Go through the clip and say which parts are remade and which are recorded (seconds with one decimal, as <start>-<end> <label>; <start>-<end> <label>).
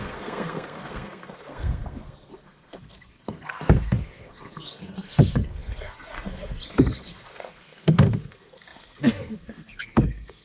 0.0-10.4 remade